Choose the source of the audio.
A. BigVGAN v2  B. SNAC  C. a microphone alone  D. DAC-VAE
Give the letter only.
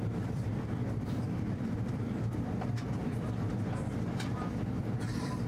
A